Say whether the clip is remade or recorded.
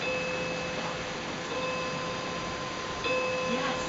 recorded